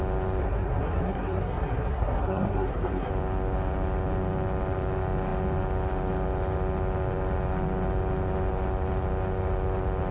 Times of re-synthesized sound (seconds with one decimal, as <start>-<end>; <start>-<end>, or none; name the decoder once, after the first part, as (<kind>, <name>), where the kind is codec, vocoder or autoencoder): 0.4-3.1 (codec, SNAC)